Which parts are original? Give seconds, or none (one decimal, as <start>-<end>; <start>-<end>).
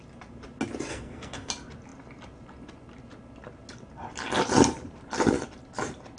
0.0-0.9; 1.5-6.2